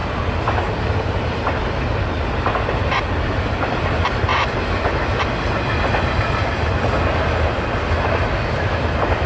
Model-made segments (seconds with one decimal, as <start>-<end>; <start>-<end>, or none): none